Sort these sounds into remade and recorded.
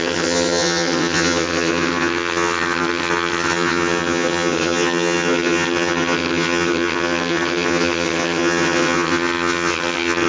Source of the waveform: remade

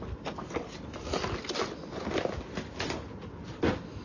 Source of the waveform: recorded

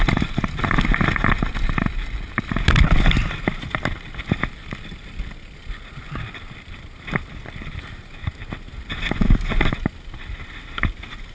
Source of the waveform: recorded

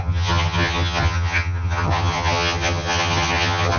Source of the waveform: remade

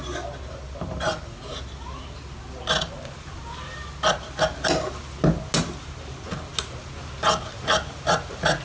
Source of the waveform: recorded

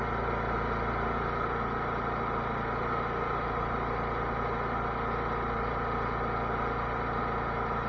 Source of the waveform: recorded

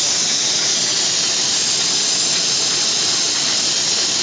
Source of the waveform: recorded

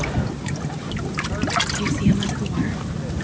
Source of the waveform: recorded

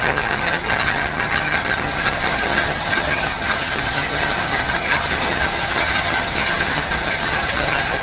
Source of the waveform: remade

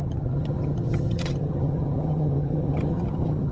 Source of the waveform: remade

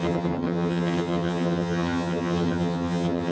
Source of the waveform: remade